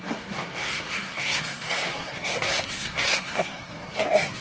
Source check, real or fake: fake